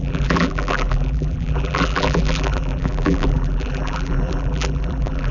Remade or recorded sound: remade